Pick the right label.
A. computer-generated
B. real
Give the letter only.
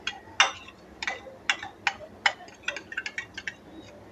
B